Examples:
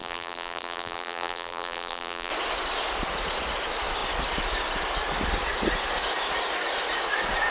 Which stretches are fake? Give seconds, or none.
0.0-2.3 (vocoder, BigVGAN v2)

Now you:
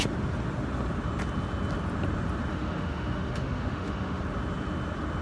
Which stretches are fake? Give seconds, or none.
2.5-4.2 (autoencoder, DAC-VAE)

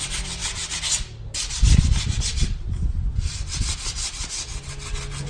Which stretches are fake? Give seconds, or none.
none

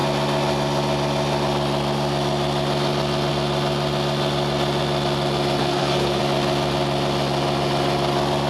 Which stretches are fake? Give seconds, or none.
5.6-6.2 (codec, SNAC)